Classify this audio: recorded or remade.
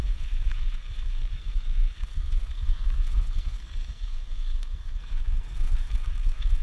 remade